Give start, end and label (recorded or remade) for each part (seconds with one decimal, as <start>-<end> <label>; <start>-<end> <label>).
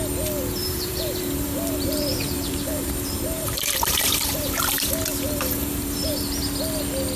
0.0-0.6 recorded; 0.6-4.9 remade; 4.9-5.6 recorded; 5.6-6.2 remade; 6.2-7.2 recorded